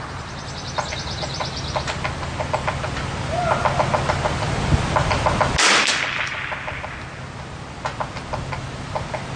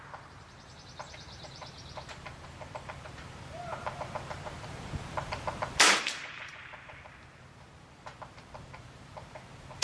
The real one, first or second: first